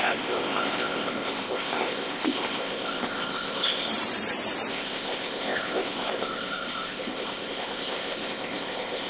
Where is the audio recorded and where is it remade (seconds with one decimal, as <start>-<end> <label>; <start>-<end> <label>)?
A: 0.0-3.9 remade; 3.9-4.7 recorded; 4.7-9.1 remade

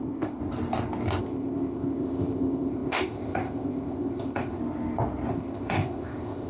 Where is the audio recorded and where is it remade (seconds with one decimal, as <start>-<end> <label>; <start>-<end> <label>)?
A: 0.0-0.4 remade; 0.4-1.2 recorded; 1.2-4.6 remade; 4.6-5.3 recorded; 5.3-6.5 remade

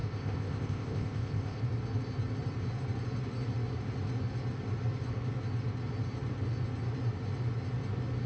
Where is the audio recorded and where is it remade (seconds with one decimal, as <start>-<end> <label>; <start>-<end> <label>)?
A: 0.0-1.6 remade; 1.6-8.3 recorded

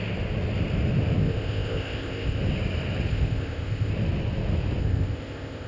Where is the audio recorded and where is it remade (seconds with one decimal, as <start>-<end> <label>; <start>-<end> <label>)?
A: 0.0-1.2 recorded; 1.2-2.4 remade; 2.4-3.1 recorded; 3.1-3.9 remade; 3.9-4.8 recorded; 4.8-5.7 remade

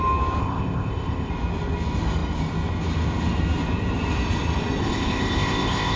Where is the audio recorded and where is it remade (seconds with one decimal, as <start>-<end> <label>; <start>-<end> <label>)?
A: 0.0-0.4 recorded; 0.4-1.3 remade; 1.3-4.8 recorded; 4.8-6.0 remade

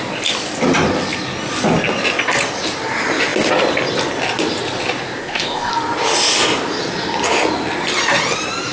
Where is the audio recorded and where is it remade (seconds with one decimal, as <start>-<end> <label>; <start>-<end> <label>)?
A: 0.0-5.2 recorded; 5.2-5.7 remade; 5.7-8.7 recorded

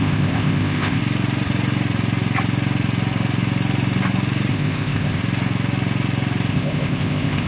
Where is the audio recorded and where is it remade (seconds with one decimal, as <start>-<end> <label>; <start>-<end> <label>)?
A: 0.0-1.0 remade; 1.0-4.5 recorded; 4.5-5.2 remade; 5.2-6.5 recorded; 6.5-7.5 remade